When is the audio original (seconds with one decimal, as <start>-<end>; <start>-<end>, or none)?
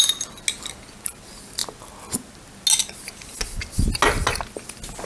0.0-5.1